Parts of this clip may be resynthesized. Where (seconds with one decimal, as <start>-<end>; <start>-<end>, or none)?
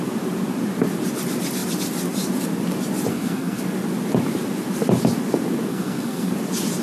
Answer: 3.1-3.6; 5.7-6.3